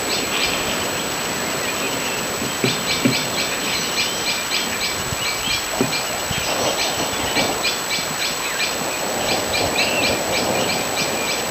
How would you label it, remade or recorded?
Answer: recorded